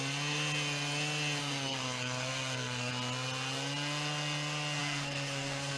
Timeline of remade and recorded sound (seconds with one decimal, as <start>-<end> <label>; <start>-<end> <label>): 0.0-1.4 recorded; 1.4-2.9 remade; 2.9-4.8 recorded; 4.8-5.8 remade